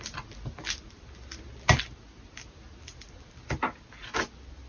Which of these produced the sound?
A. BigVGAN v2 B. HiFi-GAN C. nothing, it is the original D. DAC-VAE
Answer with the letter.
C